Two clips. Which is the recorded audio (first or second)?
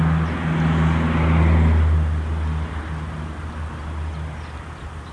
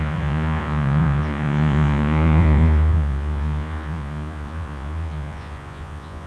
first